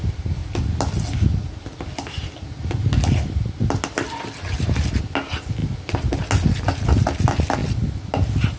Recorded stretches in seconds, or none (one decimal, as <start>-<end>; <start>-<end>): 0.0-8.6